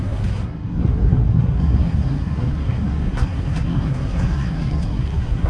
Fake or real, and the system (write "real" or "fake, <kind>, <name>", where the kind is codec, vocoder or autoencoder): fake, codec, SNAC